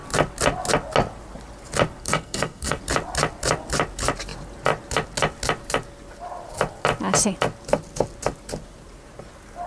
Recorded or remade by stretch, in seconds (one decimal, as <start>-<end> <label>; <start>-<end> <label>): 0.0-2.0 recorded; 2.0-2.8 remade; 2.8-9.7 recorded